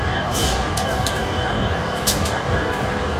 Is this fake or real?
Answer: fake